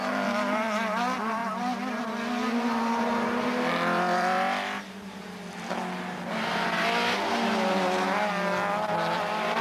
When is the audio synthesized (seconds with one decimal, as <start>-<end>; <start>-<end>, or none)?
0.0-1.4; 2.0-9.6